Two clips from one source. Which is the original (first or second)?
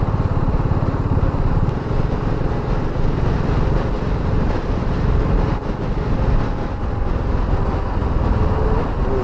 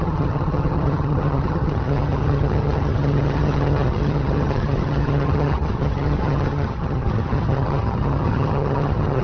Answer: first